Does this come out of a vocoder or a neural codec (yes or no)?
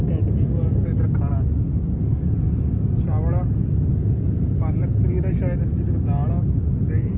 no